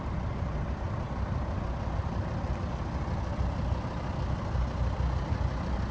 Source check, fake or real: real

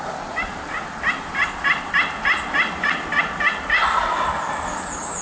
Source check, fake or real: real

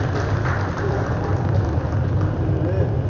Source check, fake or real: real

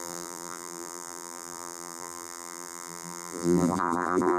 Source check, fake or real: fake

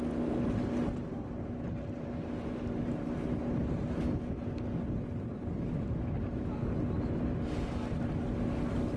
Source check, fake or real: real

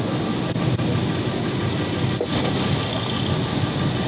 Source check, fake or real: real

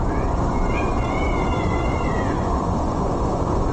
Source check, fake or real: fake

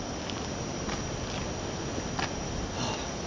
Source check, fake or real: real